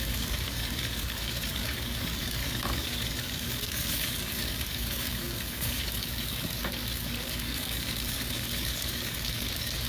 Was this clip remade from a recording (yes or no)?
yes